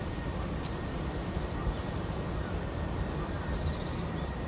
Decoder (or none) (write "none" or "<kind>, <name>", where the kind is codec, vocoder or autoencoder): none